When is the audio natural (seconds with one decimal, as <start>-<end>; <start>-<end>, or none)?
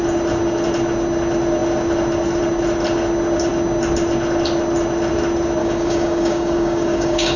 0.0-5.6